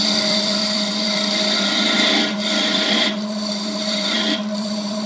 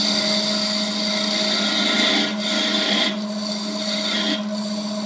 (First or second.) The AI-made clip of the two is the first